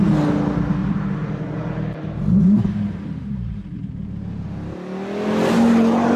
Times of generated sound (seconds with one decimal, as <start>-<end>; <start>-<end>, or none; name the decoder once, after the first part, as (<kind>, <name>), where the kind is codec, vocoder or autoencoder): 0.8-4.5 (vocoder, BigVGAN v2)